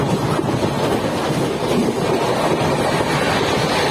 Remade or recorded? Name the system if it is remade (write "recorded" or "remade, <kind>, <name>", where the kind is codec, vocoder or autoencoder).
recorded